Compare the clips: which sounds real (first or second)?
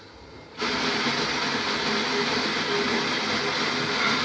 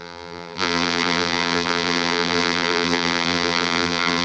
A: first